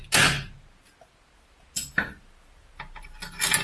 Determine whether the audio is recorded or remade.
recorded